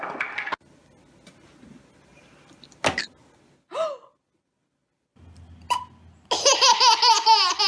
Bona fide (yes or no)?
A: yes